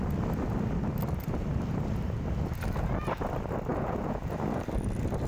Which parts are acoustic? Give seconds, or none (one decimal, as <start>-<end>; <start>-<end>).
0.0-3.7; 4.3-5.3

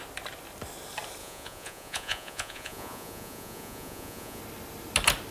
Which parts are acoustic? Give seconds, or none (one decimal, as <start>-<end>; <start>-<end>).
0.0-1.2; 4.4-5.3